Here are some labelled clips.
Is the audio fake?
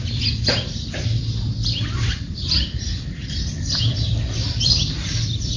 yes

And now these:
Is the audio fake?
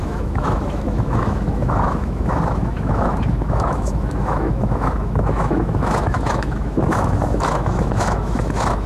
yes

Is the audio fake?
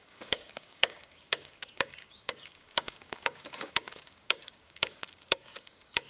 yes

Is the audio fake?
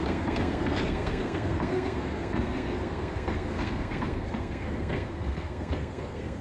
yes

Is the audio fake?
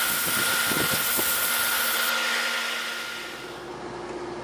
no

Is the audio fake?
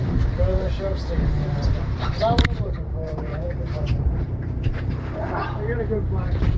yes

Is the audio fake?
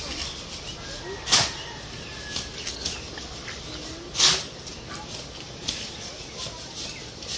no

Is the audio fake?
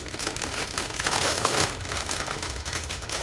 yes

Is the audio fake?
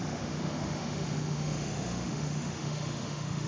yes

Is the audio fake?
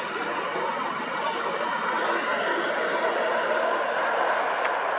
no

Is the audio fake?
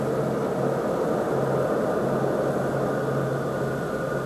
no